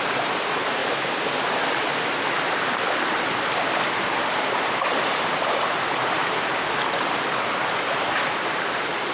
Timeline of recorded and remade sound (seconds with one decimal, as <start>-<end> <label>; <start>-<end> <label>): 0.0-0.8 remade; 0.8-4.3 recorded; 4.3-6.2 remade; 6.2-8.0 recorded; 8.0-9.1 remade